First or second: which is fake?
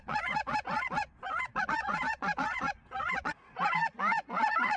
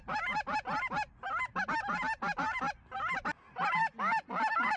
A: first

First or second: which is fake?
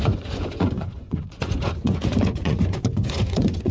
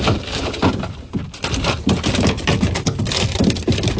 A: first